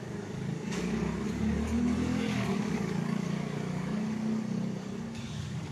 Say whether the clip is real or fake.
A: fake